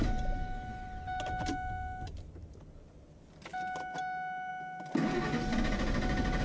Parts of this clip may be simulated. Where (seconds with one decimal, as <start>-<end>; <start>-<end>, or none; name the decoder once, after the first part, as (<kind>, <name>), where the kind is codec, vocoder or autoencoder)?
none